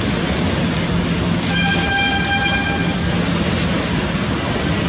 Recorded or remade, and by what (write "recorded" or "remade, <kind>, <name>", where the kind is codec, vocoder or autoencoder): recorded